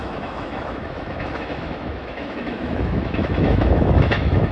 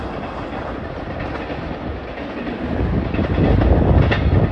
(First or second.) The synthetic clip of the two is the first